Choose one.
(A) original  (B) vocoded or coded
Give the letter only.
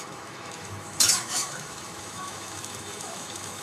B